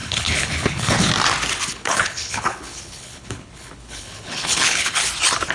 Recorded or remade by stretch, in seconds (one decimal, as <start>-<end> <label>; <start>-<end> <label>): 0.0-1.1 remade; 1.1-1.7 recorded; 1.7-5.0 remade; 5.0-5.5 recorded